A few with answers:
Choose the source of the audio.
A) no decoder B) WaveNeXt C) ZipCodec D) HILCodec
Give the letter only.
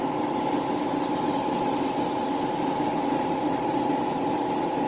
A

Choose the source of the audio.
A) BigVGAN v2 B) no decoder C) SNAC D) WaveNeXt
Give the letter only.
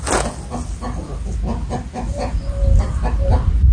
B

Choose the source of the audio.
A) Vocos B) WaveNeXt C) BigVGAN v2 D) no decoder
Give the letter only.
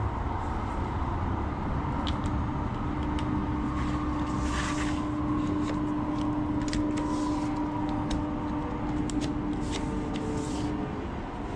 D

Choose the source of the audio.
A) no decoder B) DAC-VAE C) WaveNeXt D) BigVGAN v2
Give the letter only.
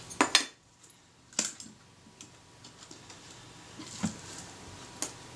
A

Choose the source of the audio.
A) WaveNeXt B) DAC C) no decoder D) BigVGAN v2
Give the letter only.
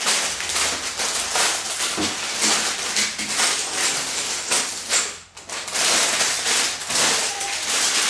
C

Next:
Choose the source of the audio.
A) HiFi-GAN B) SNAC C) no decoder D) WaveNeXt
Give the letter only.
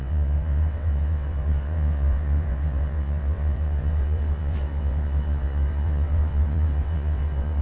D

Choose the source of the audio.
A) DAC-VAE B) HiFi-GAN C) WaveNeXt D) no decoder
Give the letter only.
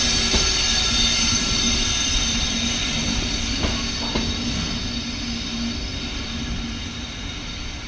D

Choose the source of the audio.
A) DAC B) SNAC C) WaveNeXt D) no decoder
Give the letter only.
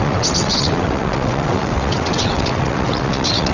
C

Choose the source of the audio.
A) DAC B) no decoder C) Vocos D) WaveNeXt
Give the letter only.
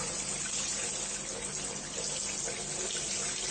B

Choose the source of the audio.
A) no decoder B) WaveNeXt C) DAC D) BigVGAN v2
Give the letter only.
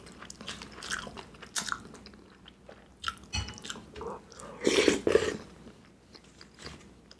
A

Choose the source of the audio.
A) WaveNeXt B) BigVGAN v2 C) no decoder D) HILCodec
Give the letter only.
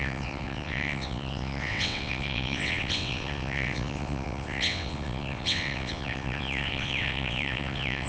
A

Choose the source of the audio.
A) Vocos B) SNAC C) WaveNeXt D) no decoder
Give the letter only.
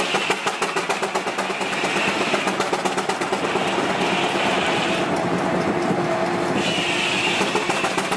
D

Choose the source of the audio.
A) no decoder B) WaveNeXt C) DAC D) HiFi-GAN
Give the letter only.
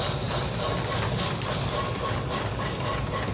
A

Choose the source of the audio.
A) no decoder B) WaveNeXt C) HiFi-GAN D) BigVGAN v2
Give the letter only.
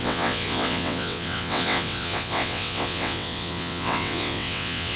B